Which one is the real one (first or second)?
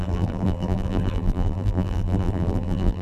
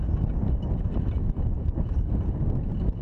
second